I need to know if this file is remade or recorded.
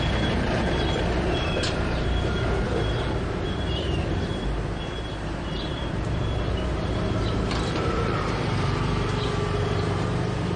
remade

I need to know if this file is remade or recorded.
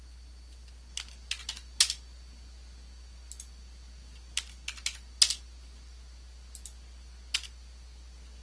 recorded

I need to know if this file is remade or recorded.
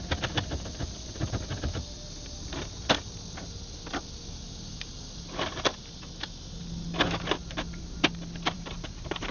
recorded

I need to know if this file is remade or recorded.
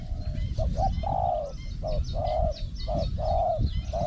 recorded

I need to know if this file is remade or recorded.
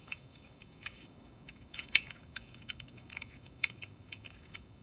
remade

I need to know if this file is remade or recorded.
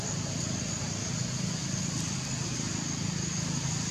recorded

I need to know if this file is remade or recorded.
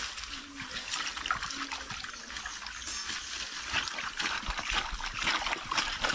recorded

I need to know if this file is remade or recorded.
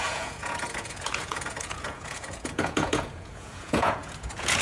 remade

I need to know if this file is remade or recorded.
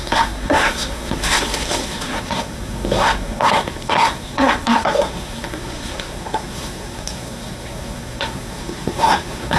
remade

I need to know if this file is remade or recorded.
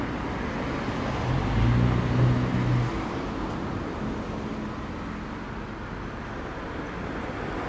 recorded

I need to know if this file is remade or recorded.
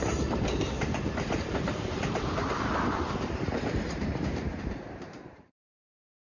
remade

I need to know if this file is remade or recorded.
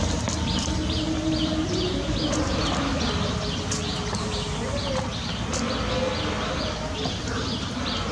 recorded